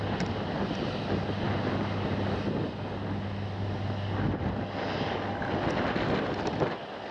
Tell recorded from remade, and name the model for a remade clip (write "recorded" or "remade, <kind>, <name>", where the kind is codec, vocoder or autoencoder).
recorded